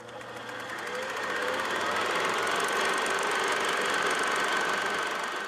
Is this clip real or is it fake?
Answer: real